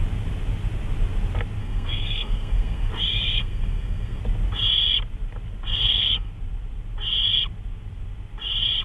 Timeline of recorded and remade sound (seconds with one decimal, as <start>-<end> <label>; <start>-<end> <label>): 0.0-1.6 recorded; 1.6-2.9 remade; 2.9-3.4 recorded; 3.4-4.2 remade; 4.2-5.7 recorded; 5.7-6.3 remade; 6.3-8.8 recorded